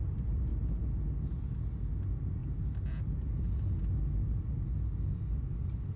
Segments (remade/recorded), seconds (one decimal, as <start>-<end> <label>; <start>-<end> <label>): 0.0-6.0 recorded